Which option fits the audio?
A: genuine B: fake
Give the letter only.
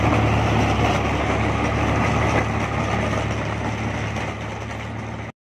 A